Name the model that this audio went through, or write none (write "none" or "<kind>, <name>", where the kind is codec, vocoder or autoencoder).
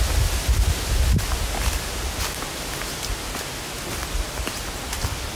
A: none